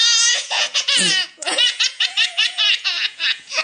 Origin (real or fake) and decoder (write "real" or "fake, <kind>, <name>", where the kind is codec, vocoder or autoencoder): fake, vocoder, Vocos